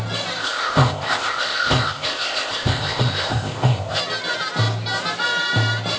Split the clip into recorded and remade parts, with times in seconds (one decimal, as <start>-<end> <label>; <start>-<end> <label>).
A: 0.0-0.4 recorded; 0.4-4.0 remade; 4.0-6.0 recorded